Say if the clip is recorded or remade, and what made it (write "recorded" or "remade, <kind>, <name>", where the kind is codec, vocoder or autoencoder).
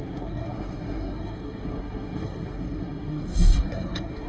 remade, codec, SNAC